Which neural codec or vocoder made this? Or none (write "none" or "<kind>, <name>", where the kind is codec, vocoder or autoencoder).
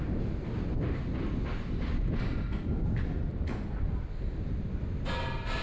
none